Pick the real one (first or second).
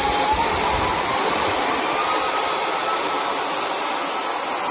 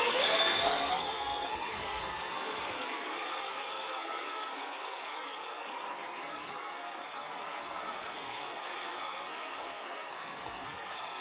first